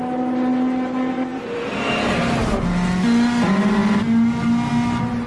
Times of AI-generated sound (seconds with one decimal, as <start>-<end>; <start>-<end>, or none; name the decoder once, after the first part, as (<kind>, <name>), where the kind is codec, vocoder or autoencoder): 1.3-2.6 (vocoder, BigVGAN v2)